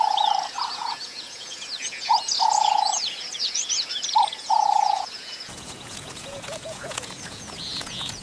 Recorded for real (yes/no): no